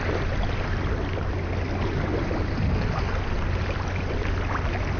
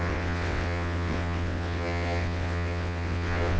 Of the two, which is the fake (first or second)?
second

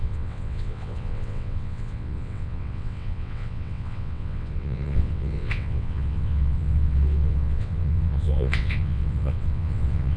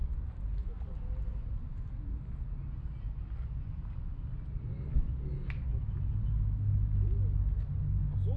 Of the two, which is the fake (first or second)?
first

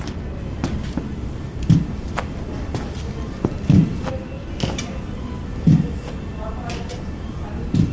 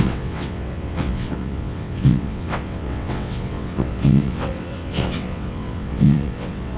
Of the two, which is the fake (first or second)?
second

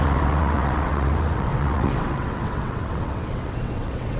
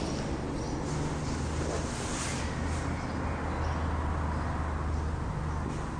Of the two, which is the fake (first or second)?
first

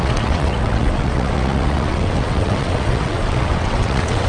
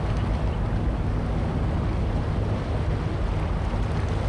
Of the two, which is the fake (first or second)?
first